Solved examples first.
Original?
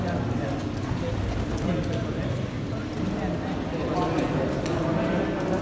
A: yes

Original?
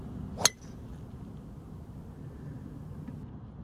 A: yes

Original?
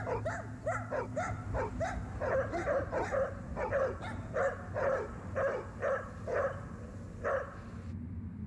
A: yes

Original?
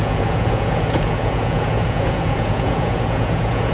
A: no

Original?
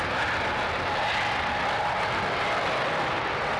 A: yes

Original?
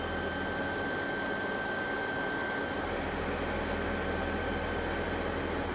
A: yes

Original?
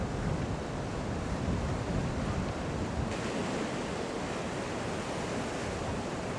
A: yes